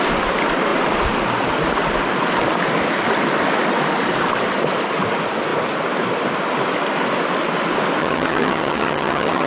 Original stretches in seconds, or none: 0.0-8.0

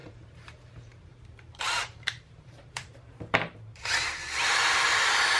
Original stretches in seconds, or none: 3.2-5.4

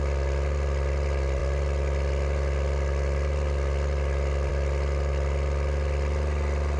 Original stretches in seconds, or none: 0.0-6.8